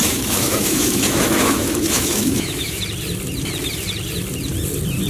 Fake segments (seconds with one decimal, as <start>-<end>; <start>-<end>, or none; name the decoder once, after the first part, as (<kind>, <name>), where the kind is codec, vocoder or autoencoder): 0.0-2.8 (autoencoder, DAC-VAE)